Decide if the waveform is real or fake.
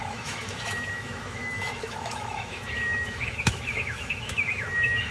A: fake